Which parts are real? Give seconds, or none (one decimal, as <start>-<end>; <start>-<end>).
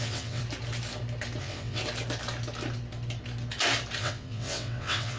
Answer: 0.4-1.4; 1.8-4.0